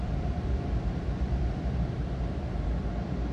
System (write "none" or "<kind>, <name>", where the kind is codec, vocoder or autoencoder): vocoder, BigVGAN v2